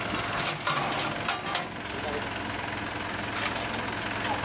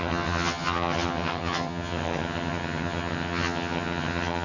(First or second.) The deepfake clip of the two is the second